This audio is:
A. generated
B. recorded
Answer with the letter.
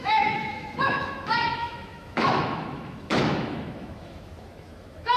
A